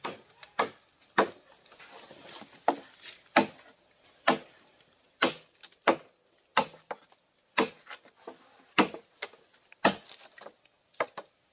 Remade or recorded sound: recorded